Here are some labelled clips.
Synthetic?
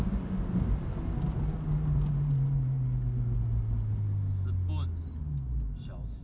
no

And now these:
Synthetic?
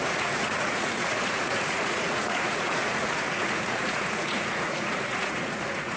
yes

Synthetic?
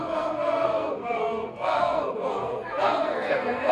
yes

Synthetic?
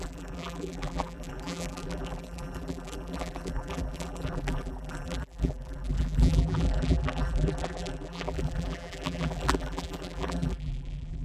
yes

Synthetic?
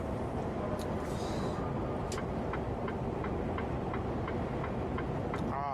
no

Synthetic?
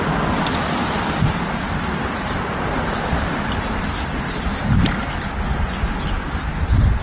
no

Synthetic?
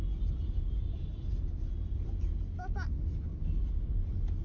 no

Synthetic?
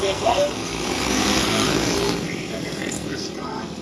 yes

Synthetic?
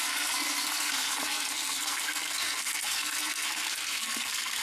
yes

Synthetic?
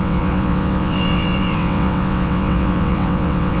yes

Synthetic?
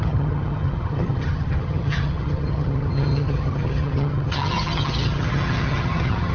yes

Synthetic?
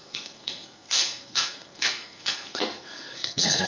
yes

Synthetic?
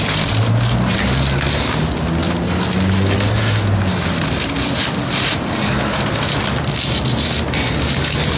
no